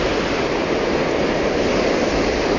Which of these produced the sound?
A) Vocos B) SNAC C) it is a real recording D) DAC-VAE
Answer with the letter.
C